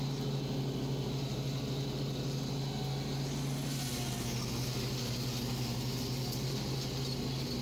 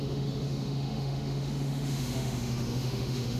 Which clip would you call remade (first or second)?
second